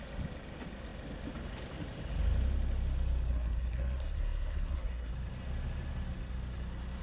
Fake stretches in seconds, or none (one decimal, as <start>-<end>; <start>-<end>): 3.3-5.1